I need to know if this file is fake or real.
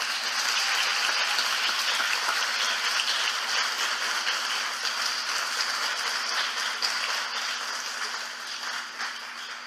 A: real